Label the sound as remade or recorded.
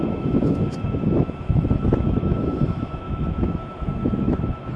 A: remade